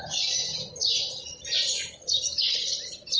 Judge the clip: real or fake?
real